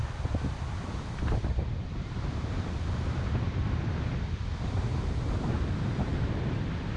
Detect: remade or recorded remade